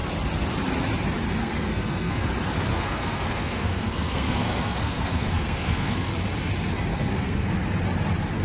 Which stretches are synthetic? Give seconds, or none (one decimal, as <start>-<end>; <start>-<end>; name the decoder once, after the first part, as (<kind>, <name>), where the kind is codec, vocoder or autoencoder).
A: 1.4-2.3 (codec, SNAC); 2.7-6.1; 6.9-7.5